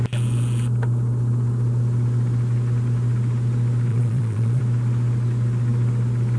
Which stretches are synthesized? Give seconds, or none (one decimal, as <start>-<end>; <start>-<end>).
3.9-4.6